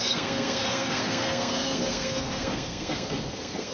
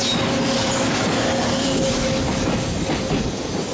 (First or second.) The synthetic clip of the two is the first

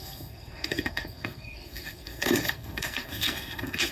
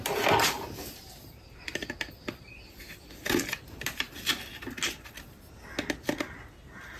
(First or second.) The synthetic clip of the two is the first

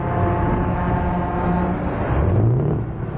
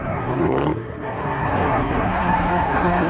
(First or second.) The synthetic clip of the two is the second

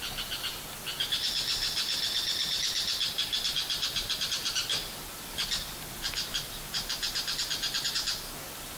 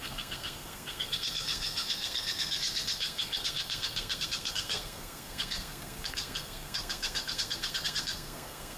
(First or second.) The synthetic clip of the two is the second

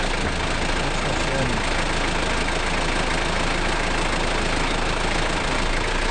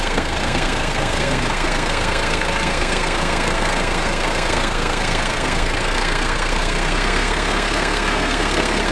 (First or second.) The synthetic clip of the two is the second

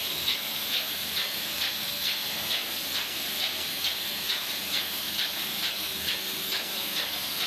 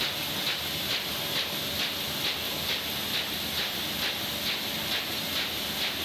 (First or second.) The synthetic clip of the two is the first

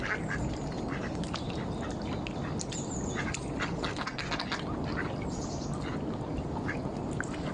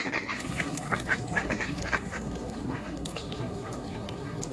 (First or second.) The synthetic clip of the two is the second